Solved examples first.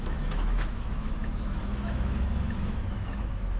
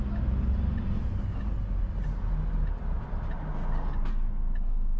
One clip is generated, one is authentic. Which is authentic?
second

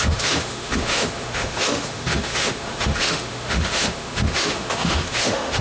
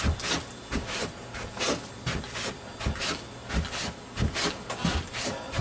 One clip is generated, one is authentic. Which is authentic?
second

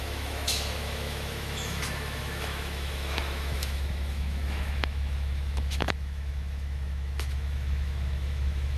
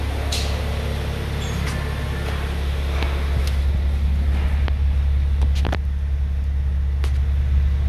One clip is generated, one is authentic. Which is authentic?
second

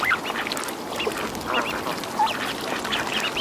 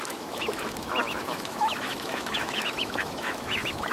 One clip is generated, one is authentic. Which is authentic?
first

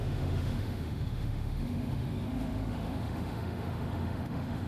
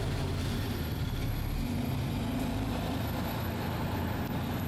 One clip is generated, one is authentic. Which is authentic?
second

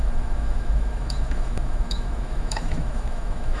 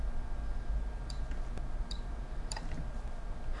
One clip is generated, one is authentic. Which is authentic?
second